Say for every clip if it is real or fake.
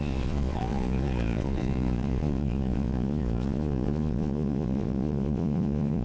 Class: fake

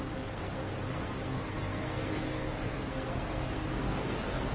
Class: fake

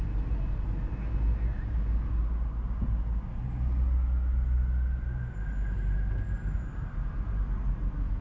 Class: real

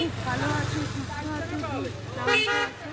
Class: real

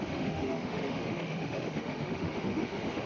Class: fake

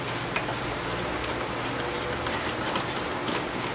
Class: real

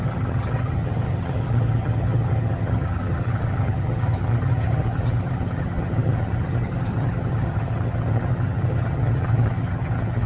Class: fake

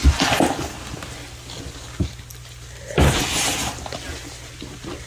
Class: real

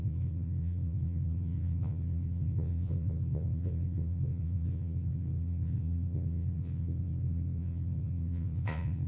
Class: fake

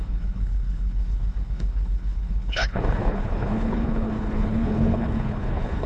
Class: fake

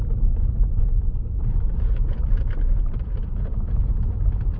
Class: fake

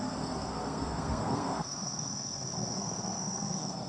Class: fake